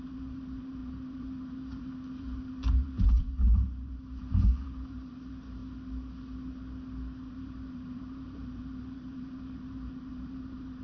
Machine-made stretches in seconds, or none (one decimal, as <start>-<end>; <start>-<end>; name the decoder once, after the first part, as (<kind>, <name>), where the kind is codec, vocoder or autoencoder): 0.0-5.6 (vocoder, BigVGAN v2); 7.3-10.8

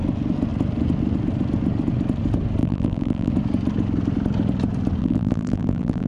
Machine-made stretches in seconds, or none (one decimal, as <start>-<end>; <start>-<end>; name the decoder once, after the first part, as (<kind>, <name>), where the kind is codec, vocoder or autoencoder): 2.6-3.3 (vocoder, BigVGAN v2); 5.0-6.1

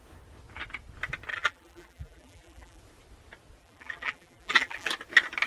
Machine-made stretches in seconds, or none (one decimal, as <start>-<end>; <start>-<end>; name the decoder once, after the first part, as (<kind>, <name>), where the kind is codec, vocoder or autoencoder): 1.3-2.8 (vocoder, BigVGAN v2); 3.6-4.9

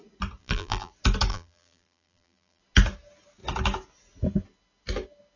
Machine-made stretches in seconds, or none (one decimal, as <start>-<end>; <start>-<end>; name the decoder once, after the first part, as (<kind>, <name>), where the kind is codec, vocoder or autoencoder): 0.4-0.9 (vocoder, BigVGAN v2); 1.3-2.6

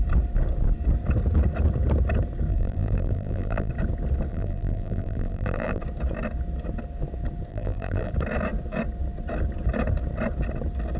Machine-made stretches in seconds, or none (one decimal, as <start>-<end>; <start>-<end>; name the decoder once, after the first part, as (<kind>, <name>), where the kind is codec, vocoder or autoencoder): 2.5-3.7 (vocoder, BigVGAN v2); 4.3-5.8; 7.5-8.1